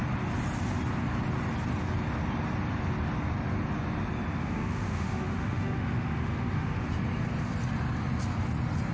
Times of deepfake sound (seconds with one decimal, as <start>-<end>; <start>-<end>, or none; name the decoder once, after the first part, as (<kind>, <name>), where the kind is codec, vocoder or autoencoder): 4.4-6.8 (autoencoder, DAC-VAE)